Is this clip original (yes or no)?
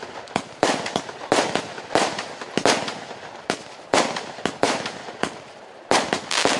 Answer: yes